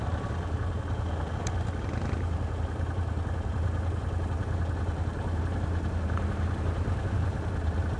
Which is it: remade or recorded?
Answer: recorded